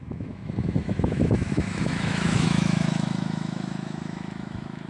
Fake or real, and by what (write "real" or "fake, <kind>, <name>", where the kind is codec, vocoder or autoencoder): fake, autoencoder, DAC-VAE